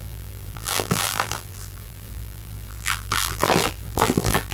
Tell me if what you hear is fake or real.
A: fake